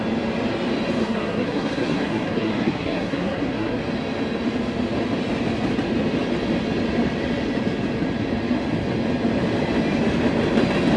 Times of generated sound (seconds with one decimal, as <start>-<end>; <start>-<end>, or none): 1.0-3.8